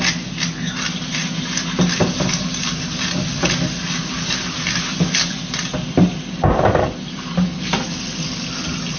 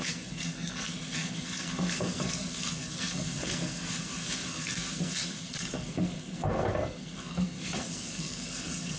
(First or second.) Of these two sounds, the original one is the first